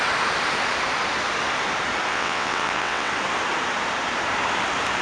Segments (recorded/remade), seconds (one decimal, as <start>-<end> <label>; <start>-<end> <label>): 0.0-2.1 recorded; 2.1-3.1 remade; 3.1-5.0 recorded